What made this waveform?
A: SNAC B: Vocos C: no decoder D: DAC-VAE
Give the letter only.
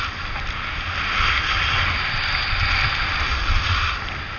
C